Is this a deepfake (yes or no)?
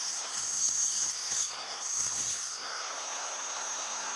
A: yes